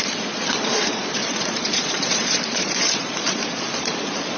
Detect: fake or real fake